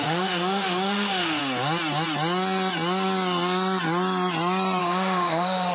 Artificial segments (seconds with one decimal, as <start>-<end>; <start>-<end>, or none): 0.0-1.4; 4.8-5.7